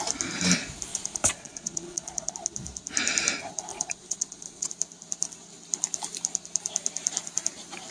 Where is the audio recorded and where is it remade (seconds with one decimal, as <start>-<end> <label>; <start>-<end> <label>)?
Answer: 0.0-0.9 recorded; 0.9-2.3 remade; 2.3-3.7 recorded; 3.7-4.7 remade; 4.7-7.9 recorded